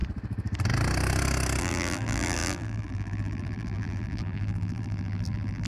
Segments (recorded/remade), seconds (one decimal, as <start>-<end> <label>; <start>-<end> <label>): 0.0-1.6 recorded; 1.6-5.7 remade